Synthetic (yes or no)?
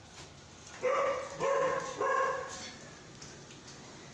no